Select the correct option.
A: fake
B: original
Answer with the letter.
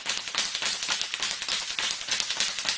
B